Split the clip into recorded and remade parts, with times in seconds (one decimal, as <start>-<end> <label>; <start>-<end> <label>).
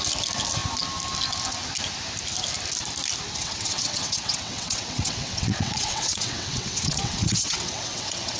0.0-3.4 recorded; 3.4-8.4 remade